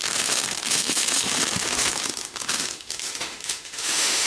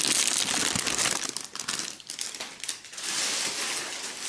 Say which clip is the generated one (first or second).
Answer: first